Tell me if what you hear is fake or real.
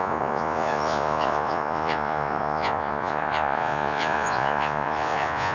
fake